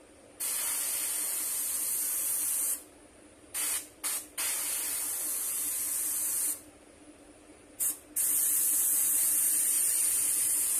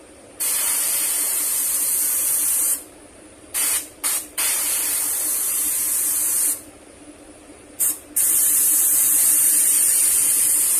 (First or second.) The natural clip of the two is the first